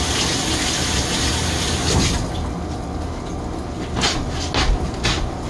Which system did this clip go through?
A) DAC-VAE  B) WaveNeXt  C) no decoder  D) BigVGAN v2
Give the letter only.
C